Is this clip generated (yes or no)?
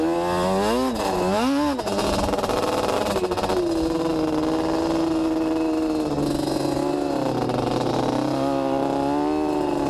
no